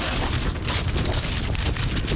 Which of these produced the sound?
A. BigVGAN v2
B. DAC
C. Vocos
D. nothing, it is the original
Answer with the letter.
D